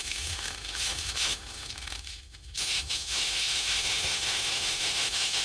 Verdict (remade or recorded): remade